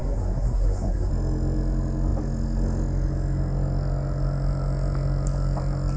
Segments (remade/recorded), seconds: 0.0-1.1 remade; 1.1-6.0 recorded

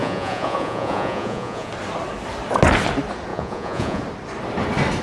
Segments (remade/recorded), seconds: 0.0-1.7 remade; 1.7-3.3 recorded; 3.3-4.0 remade; 4.0-5.0 recorded